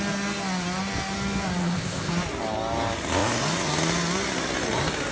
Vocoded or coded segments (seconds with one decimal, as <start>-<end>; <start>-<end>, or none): 1.6-2.1